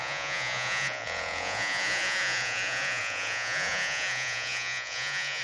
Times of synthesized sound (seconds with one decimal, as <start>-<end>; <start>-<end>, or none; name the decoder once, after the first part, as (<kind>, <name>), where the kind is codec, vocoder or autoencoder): 0.0-5.4 (vocoder, Vocos)